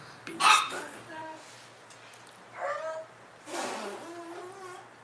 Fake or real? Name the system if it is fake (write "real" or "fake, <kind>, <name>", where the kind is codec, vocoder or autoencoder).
real